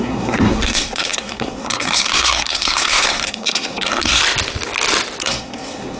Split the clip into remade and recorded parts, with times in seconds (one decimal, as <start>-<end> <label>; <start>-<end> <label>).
0.0-4.2 remade; 4.2-5.2 recorded; 5.2-6.0 remade